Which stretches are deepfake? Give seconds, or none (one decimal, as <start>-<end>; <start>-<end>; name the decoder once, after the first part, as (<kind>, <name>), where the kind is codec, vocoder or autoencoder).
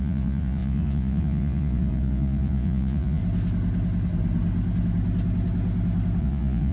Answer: 0.0-3.2 (vocoder, Vocos); 6.2-6.7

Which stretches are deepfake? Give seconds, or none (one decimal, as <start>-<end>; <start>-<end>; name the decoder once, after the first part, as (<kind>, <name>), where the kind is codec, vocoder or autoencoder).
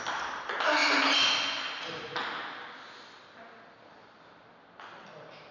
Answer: none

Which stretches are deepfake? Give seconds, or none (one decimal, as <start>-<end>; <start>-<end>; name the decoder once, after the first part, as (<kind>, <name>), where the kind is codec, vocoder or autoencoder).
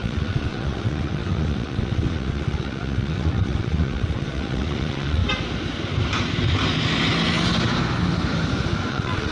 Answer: 0.0-5.2 (vocoder, WaveNeXt); 8.9-9.3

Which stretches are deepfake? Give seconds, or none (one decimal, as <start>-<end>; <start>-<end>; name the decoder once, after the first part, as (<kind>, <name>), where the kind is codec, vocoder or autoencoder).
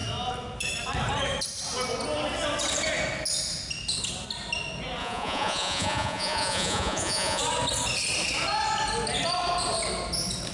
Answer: 5.0-7.4 (vocoder, Vocos)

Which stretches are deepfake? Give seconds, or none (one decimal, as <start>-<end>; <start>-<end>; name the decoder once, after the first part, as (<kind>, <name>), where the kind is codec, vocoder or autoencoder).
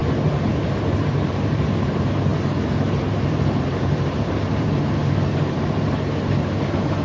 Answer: 0.0-7.0 (vocoder, BigVGAN v2)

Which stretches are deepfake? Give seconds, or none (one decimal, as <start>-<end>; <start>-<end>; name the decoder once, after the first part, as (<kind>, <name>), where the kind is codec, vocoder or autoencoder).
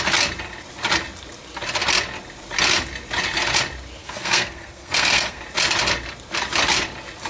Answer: 4.0-5.4 (codec, SNAC)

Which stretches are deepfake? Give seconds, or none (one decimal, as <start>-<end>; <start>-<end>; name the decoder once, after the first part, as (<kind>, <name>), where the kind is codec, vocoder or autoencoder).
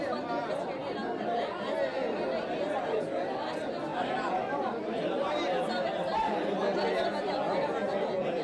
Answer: 3.9-6.5 (vocoder, BigVGAN v2)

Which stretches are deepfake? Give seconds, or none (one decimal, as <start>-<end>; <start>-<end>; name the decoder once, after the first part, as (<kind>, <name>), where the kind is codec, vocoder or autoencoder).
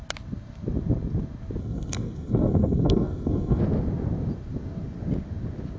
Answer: 1.6-3.6 (codec, SNAC)